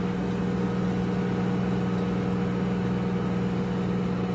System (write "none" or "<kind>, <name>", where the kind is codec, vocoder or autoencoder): none